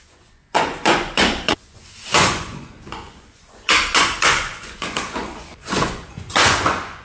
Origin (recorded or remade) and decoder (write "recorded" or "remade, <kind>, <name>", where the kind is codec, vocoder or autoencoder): remade, vocoder, Vocos